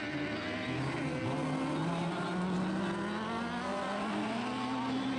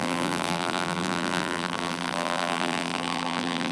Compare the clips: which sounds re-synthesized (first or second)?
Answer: second